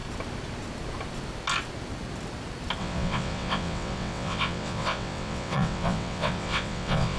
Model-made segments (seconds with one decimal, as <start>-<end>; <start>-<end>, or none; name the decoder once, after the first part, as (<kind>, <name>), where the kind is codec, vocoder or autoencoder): 2.8-7.2 (vocoder, WaveNeXt)